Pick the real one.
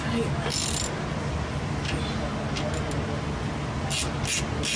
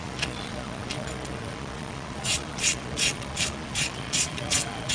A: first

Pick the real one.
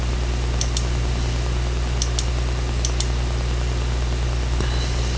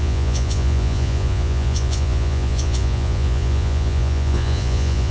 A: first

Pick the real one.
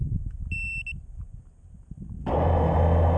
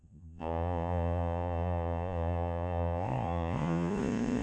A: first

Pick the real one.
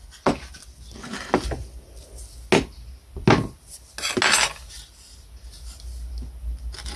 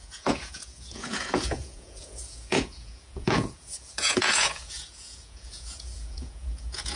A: first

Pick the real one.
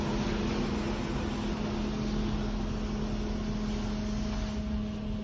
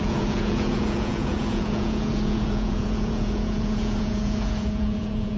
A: first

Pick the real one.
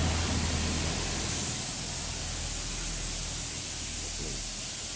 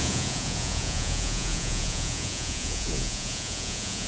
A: first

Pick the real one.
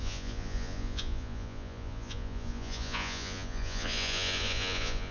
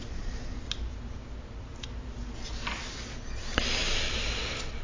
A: second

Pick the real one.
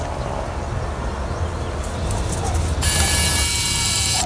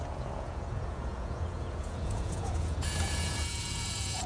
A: first